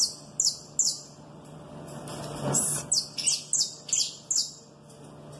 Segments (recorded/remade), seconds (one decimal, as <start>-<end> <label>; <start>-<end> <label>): 0.0-0.8 recorded; 0.8-1.7 remade; 1.7-5.4 recorded